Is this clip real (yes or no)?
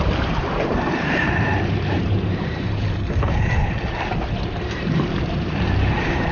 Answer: no